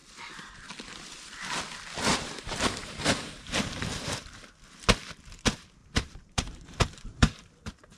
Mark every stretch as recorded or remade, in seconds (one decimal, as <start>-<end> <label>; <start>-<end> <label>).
0.0-2.1 recorded; 2.1-4.8 remade; 4.8-5.8 recorded; 5.8-7.4 remade; 7.4-8.0 recorded